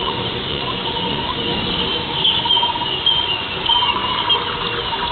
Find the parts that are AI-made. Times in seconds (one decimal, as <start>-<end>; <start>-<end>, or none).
0.0-1.5; 2.5-4.0